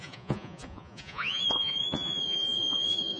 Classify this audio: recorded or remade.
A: remade